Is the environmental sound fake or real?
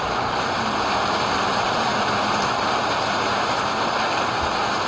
real